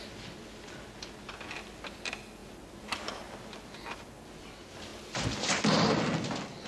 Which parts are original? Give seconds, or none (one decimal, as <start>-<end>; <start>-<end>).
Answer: 0.0-6.7